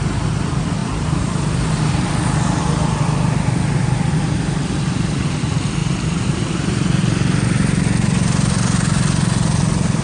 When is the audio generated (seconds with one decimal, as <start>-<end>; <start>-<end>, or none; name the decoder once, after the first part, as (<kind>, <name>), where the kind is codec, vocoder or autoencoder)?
0.8-1.9 (vocoder, BigVGAN v2); 5.8-7.0